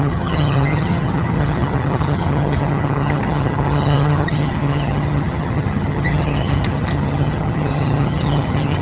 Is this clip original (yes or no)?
no